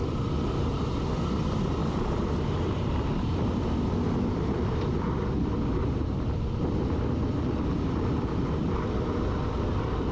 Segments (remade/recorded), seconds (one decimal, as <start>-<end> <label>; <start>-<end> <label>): 0.0-10.1 recorded